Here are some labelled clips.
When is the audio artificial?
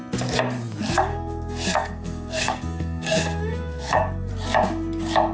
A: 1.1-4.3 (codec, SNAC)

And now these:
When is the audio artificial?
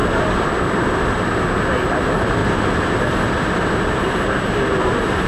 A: none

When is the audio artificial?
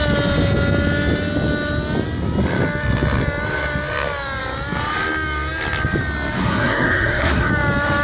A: 6.4-7.5 (codec, SNAC)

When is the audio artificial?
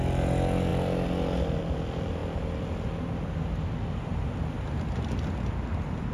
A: none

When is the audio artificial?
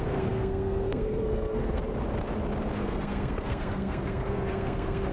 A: 0.0-1.8 (codec, SNAC); 2.8-5.1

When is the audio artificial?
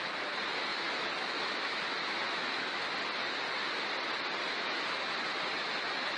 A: 0.7-2.9 (autoencoder, DAC-VAE); 4.4-5.2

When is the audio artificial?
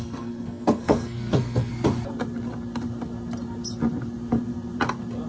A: 0.0-1.7 (codec, SNAC)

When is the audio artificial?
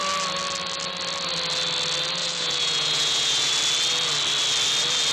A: 2.2-3.5 (vocoder, Vocos)